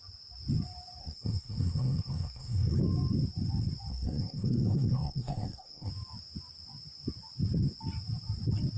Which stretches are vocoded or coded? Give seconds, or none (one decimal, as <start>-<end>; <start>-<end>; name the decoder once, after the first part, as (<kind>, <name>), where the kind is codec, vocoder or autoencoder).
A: 1.0-2.8 (codec, SNAC); 3.9-5.9